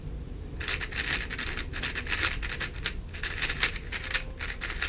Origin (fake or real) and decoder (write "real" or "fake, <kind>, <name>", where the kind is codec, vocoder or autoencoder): real